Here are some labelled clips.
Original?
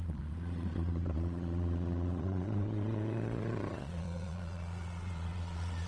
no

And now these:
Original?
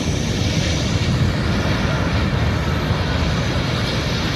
yes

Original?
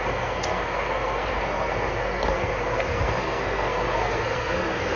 no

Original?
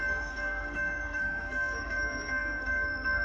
no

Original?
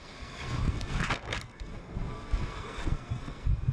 no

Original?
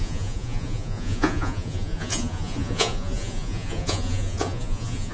no